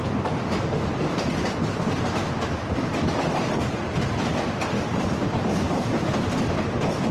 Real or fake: real